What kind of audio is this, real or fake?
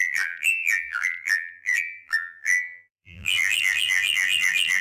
fake